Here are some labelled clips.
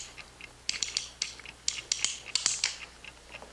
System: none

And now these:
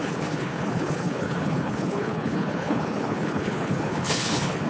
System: codec, HILCodec